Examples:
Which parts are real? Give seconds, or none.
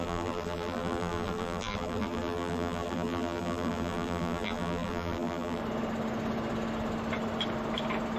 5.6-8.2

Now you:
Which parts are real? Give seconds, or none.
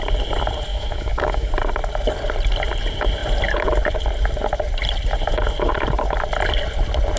0.0-0.7; 1.5-7.2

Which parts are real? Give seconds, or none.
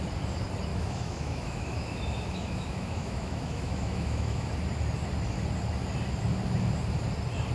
0.0-0.7; 4.5-7.5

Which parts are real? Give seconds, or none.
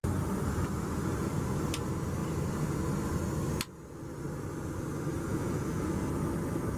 0.0-5.3; 6.0-6.8